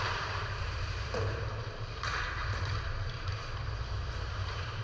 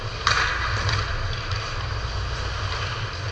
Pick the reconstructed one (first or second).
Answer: first